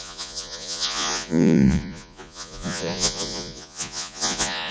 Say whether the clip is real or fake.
fake